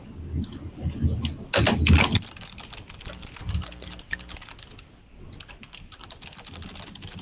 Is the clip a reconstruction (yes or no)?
no